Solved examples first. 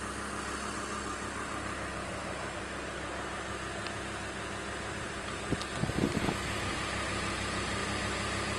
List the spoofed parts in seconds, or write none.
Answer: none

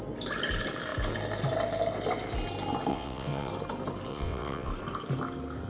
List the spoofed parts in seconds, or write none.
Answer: 2.9-3.5 (vocoder, WaveNeXt); 4.1-4.7